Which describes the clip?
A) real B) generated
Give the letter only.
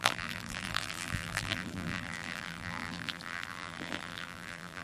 B